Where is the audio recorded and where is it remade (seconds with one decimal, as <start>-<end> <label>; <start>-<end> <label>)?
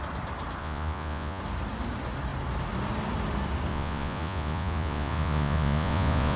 0.0-0.6 recorded; 0.6-1.4 remade; 1.4-3.7 recorded; 3.7-6.4 remade